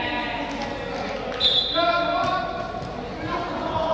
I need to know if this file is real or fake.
real